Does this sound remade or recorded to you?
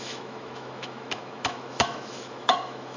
remade